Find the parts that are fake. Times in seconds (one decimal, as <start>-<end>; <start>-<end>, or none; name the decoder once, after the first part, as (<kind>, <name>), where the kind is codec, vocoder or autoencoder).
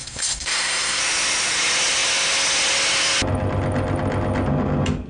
0.0-1.0 (codec, SNAC)